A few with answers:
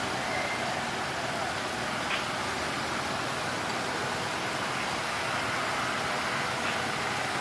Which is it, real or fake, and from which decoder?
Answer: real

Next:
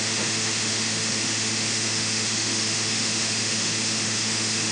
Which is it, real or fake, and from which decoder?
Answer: fake, autoencoder, DAC-VAE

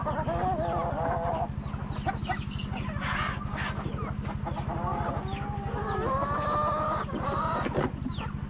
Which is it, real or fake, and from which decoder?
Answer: real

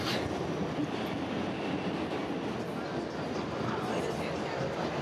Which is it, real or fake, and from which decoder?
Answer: real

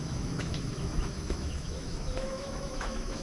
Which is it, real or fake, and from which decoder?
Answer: fake, autoencoder, DAC-VAE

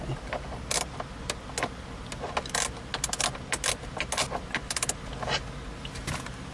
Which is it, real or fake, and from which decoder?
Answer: real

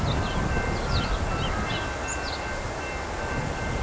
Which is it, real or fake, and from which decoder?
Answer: real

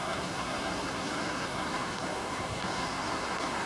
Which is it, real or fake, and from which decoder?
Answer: fake, codec, SNAC